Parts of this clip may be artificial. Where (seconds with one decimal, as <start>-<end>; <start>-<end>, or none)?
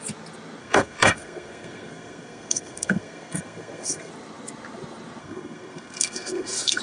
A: 0.6-4.1; 5.2-6.8